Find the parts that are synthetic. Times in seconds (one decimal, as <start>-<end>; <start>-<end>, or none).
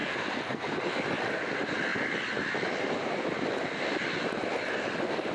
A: 0.0-0.8